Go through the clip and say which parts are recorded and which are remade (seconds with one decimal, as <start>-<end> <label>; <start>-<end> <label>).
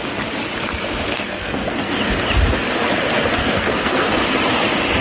0.0-1.1 recorded; 1.1-1.9 remade; 1.9-3.4 recorded; 3.4-4.1 remade; 4.1-5.0 recorded